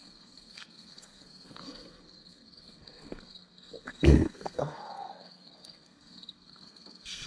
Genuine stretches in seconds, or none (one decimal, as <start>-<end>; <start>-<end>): none